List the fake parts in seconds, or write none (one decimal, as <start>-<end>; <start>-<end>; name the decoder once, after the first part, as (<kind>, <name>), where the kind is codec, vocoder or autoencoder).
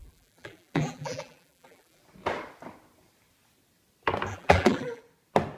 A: 0.0-2.0 (vocoder, BigVGAN v2); 4.3-5.0